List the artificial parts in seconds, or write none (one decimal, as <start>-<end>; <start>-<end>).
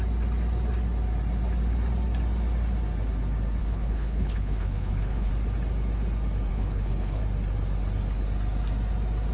3.6-5.3; 6.5-7.2